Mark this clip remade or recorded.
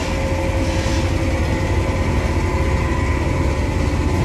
recorded